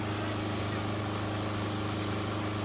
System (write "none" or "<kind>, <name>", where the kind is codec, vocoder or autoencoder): none